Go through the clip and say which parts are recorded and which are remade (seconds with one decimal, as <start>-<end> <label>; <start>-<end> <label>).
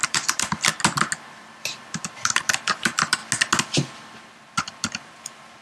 0.0-0.7 remade; 0.7-1.5 recorded; 1.5-3.2 remade; 3.2-4.3 recorded; 4.3-5.6 remade